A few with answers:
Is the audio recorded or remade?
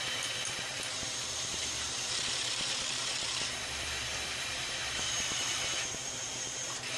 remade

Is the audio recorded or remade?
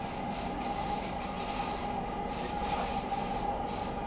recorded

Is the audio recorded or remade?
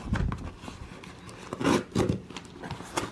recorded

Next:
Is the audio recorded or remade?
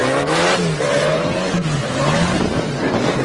recorded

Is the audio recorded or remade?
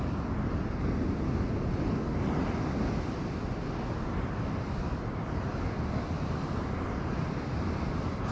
recorded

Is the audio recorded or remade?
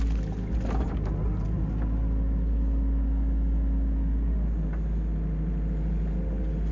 recorded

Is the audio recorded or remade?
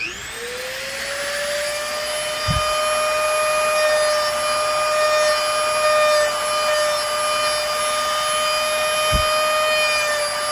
recorded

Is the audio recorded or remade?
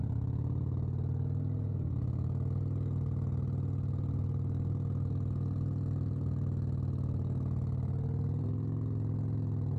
recorded